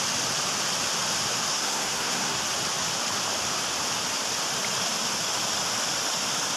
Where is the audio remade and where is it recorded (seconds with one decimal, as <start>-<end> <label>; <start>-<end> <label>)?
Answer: 0.0-1.5 recorded; 1.5-2.4 remade; 2.4-6.6 recorded